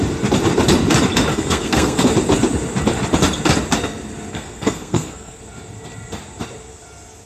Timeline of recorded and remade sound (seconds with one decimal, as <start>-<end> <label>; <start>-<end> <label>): 0.0-1.3 recorded; 1.3-2.1 remade; 2.1-4.3 recorded; 4.3-5.4 remade; 5.4-7.3 recorded